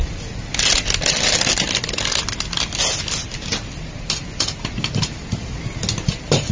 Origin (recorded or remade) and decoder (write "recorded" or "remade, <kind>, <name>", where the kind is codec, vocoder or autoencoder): recorded